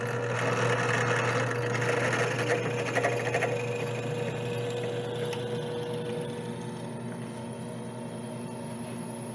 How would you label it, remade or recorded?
recorded